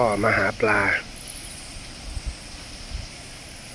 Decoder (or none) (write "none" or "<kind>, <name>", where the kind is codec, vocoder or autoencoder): none